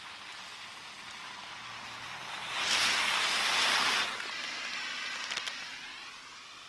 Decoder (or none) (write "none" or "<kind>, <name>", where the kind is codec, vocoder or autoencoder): none